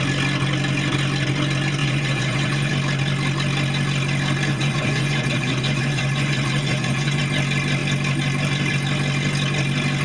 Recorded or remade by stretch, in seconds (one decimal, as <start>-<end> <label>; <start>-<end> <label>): 0.0-1.8 recorded; 1.8-2.7 remade; 2.7-4.5 recorded; 4.5-7.2 remade; 7.2-10.0 recorded